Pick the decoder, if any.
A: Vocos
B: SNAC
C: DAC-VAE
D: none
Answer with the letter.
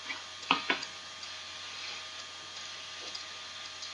D